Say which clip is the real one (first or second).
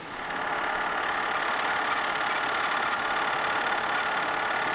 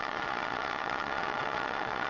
first